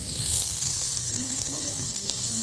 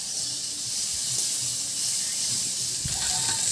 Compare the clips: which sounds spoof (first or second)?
first